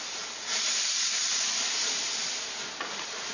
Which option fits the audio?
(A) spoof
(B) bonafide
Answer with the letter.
B